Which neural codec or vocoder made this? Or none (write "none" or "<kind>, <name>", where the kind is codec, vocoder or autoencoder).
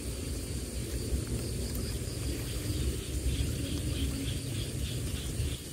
none